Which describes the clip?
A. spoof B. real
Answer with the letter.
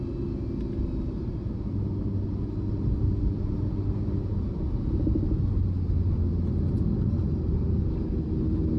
B